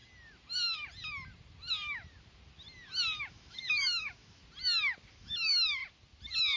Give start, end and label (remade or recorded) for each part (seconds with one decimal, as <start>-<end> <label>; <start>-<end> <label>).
0.0-3.3 recorded; 3.3-4.4 remade; 4.4-5.1 recorded; 5.1-5.8 remade; 5.8-6.6 recorded